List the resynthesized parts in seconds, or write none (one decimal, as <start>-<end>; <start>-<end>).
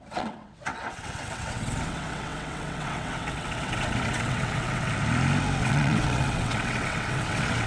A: 0.0-4.9; 5.6-7.7